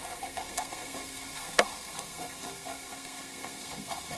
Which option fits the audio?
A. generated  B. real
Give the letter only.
A